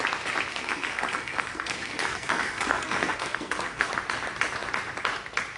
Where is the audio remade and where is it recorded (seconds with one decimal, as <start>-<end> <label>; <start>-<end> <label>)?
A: 0.0-0.5 recorded; 0.5-3.9 remade; 3.9-5.6 recorded